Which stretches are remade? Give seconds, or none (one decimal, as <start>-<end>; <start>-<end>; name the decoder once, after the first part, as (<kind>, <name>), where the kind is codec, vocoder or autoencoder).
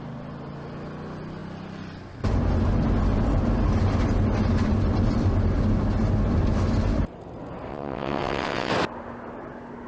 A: 7.7-8.7 (vocoder, WaveNeXt)